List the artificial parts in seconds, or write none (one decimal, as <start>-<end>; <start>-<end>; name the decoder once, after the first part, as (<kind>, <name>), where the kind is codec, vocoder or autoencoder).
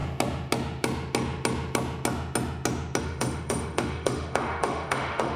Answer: 3.0-5.4 (autoencoder, DAC-VAE)